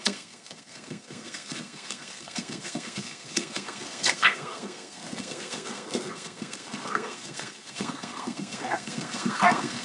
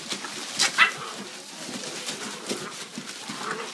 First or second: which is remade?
first